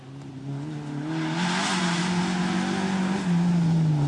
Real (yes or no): yes